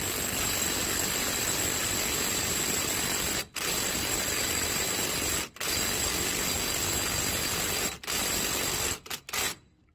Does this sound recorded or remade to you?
remade